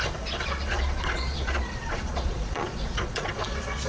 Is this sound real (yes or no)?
no